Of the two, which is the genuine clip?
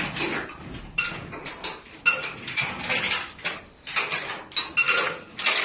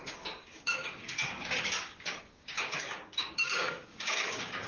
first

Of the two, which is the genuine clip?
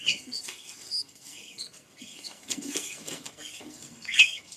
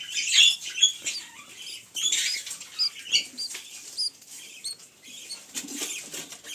second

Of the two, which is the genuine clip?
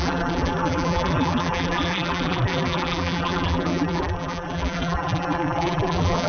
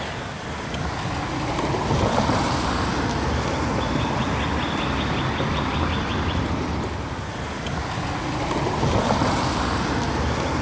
second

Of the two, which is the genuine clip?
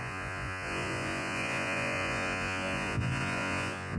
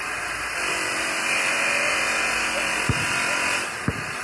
second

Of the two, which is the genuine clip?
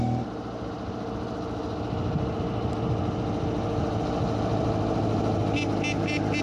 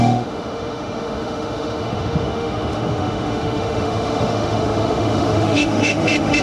first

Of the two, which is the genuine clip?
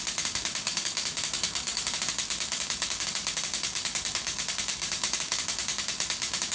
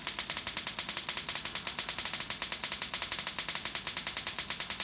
second